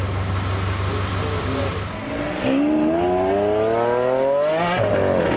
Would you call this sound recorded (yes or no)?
yes